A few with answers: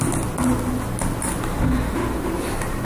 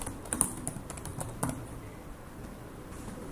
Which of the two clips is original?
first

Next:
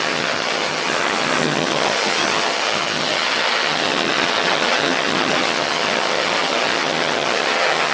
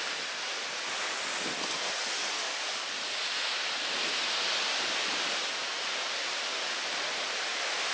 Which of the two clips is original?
second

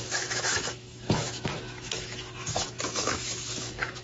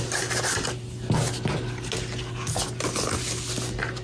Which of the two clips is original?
second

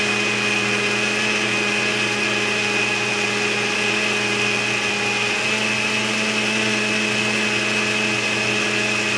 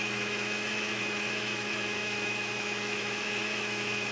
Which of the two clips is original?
first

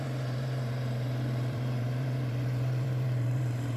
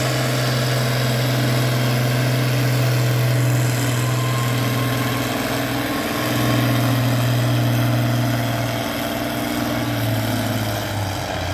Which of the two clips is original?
second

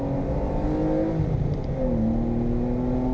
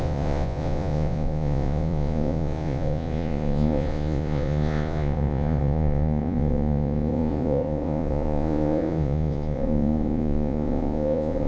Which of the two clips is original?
first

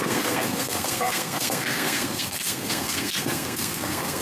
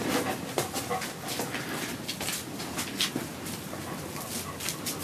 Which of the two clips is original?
second